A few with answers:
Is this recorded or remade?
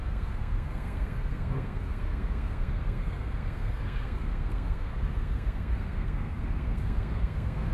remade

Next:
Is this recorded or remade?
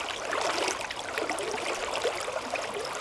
recorded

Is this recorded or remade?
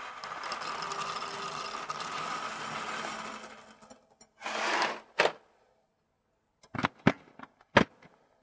recorded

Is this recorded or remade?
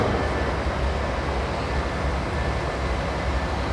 recorded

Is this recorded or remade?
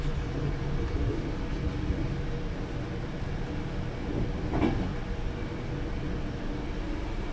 recorded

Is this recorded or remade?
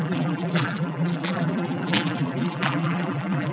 remade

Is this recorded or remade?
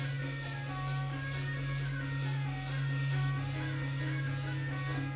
recorded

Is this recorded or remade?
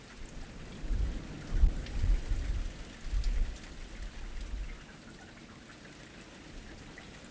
recorded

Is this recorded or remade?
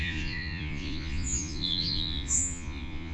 remade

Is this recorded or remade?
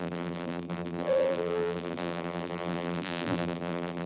remade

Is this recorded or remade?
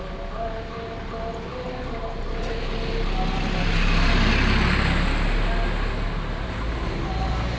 recorded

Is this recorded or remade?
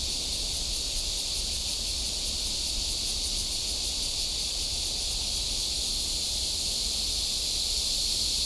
recorded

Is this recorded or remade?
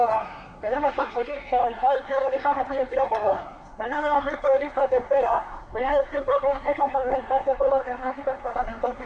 remade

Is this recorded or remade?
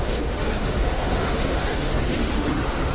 remade